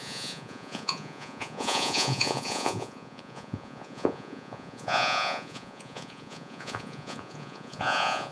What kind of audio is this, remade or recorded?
remade